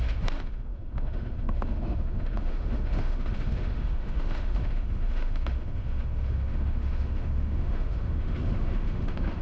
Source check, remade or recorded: remade